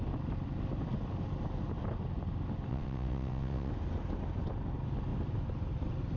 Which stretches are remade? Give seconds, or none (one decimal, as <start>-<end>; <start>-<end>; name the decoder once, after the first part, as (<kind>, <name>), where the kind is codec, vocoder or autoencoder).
2.7-3.7 (vocoder, WaveNeXt)